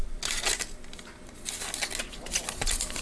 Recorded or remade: recorded